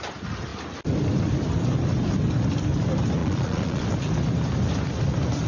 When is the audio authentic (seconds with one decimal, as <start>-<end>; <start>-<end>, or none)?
0.0-3.2; 3.8-5.5